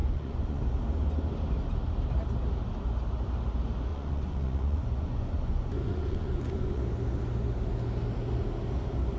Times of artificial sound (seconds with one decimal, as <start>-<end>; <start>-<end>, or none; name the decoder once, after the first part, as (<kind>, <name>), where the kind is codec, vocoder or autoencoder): 0.0-0.6 (vocoder, Vocos); 3.9-6.8